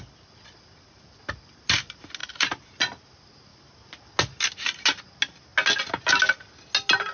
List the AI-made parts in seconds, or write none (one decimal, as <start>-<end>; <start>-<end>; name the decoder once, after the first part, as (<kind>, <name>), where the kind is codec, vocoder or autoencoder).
none